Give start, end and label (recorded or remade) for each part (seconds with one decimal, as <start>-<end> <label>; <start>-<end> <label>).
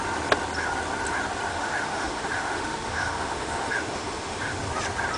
0.0-1.5 recorded; 1.5-4.6 remade; 4.6-5.2 recorded